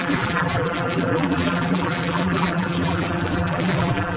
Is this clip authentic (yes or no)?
no